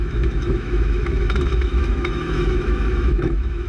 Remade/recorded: remade